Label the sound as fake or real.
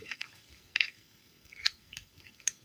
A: fake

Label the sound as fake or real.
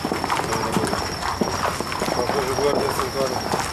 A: real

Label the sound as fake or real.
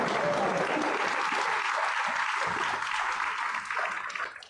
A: real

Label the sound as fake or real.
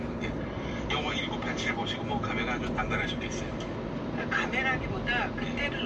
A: real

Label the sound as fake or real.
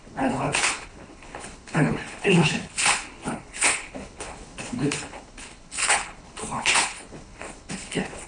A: fake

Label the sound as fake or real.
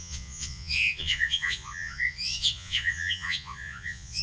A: fake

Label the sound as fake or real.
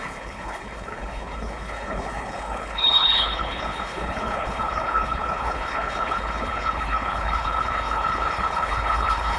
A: fake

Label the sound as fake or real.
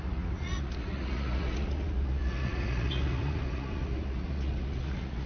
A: fake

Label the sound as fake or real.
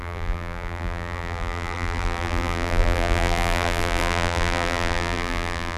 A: fake